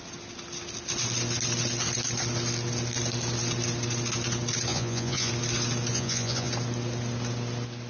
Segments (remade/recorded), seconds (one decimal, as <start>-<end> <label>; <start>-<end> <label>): 0.0-4.7 recorded; 4.7-5.3 remade; 5.3-5.9 recorded; 5.9-6.5 remade; 6.5-7.9 recorded